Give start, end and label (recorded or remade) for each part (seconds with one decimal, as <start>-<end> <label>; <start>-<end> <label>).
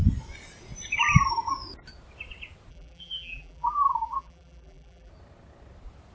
0.0-2.7 recorded; 2.7-5.1 remade; 5.1-6.1 recorded